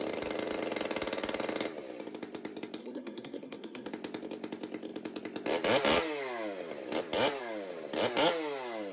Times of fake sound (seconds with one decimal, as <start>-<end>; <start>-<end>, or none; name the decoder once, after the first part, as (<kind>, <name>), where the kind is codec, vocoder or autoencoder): 2.8-3.9 (codec, SNAC)